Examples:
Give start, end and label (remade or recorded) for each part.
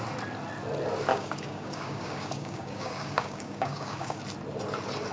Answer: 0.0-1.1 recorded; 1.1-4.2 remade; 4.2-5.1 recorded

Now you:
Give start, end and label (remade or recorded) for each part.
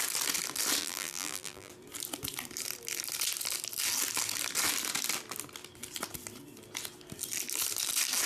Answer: 0.0-0.8 recorded; 0.8-1.7 remade; 1.7-8.3 recorded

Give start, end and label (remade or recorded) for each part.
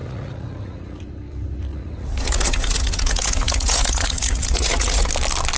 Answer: 0.0-1.0 remade; 1.0-1.7 recorded; 1.7-5.1 remade; 5.1-5.6 recorded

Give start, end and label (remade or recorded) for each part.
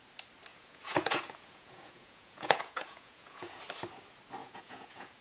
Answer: 0.0-0.5 recorded; 0.5-3.6 remade; 3.6-4.4 recorded; 4.4-5.2 remade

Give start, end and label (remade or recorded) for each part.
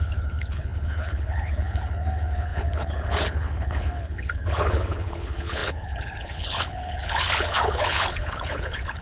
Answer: 0.0-9.0 remade